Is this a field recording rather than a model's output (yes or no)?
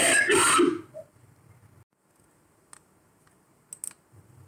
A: yes